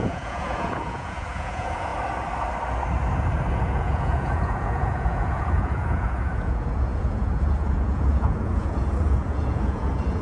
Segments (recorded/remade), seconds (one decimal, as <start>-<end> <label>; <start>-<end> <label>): 0.0-1.9 remade; 1.9-3.5 recorded; 3.5-10.2 remade